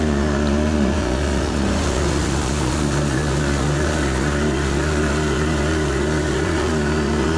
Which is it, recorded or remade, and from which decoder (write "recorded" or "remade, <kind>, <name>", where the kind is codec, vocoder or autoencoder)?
remade, vocoder, Vocos